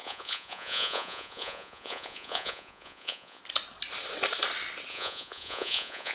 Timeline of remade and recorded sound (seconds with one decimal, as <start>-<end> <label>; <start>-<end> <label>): 0.0-3.4 remade; 3.4-4.9 recorded; 4.9-6.1 remade